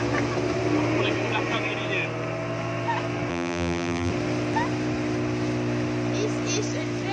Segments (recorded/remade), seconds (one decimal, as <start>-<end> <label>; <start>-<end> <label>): 0.0-3.3 recorded; 3.3-4.1 remade; 4.1-7.1 recorded